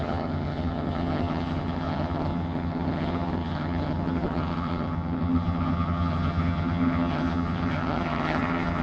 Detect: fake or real fake